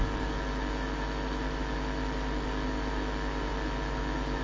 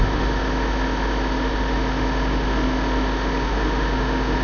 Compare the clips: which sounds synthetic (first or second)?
second